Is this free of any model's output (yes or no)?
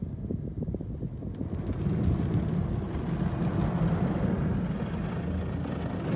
yes